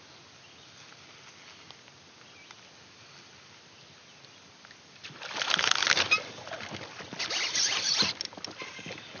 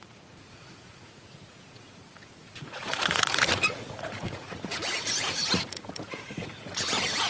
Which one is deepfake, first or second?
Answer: second